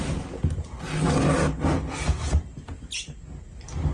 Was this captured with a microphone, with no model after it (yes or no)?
yes